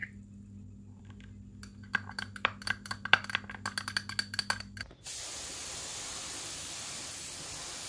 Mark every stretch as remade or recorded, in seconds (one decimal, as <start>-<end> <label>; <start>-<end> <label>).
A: 0.0-7.9 recorded